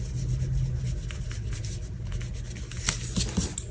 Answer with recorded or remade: recorded